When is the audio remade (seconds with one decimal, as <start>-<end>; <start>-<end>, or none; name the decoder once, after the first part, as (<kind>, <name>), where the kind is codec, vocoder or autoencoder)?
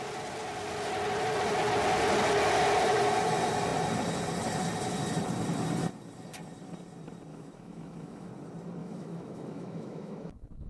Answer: 7.3-8.3 (autoencoder, DAC-VAE); 8.8-10.7